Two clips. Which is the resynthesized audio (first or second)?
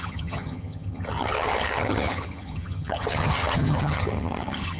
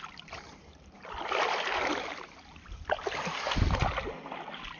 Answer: first